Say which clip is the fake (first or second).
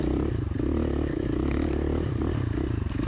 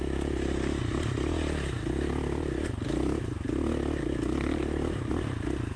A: first